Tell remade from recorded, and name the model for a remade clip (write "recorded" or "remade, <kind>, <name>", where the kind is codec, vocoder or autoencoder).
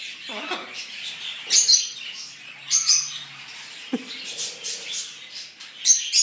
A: recorded